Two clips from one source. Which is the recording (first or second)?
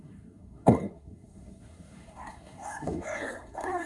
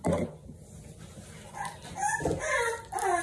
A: second